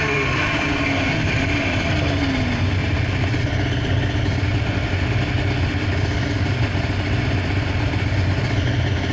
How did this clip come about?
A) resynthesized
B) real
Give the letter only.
B